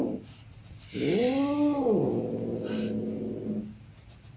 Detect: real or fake real